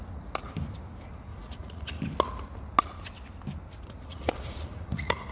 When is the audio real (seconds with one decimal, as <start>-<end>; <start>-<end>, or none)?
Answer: 0.0-1.3; 2.0-4.1